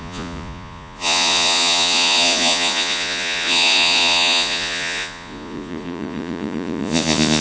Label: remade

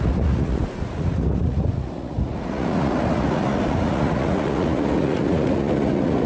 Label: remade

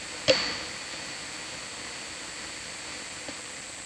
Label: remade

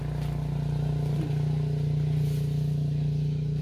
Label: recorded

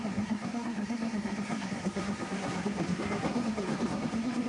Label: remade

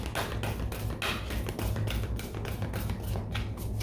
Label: recorded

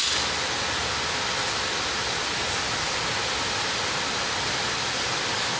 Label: recorded